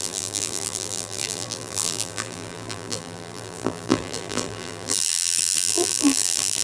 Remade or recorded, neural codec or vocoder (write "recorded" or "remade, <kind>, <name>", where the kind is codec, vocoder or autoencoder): remade, vocoder, BigVGAN v2